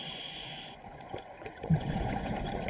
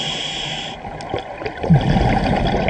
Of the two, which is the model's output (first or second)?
first